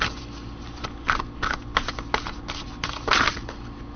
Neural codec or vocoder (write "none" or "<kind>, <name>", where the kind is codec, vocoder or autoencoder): none